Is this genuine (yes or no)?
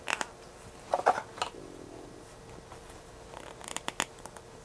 yes